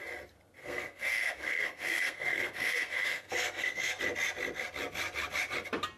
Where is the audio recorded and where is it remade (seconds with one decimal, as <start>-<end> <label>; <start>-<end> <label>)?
0.0-0.6 recorded; 0.6-4.0 remade; 4.0-6.0 recorded